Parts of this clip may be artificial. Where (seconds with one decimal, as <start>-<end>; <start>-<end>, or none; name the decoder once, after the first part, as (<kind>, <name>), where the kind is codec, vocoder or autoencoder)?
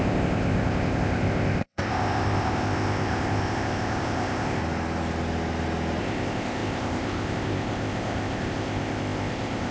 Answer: 0.0-4.6 (codec, ZipCodec); 6.0-9.7